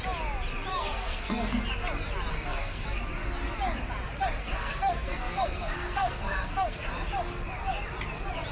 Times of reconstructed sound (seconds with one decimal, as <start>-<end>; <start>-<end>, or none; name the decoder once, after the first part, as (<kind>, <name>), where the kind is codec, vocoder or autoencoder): 0.7-1.6 (codec, SNAC); 2.3-3.0; 4.4-6.9